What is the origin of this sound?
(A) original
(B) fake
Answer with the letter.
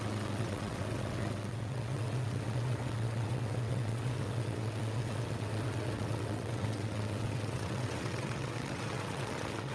B